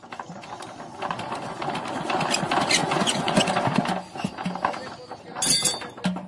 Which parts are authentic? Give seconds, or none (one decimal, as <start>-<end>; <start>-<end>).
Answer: 0.0-2.8; 3.5-6.3